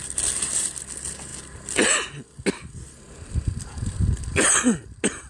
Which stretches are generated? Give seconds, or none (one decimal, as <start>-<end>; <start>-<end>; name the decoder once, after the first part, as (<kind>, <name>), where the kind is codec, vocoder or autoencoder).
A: none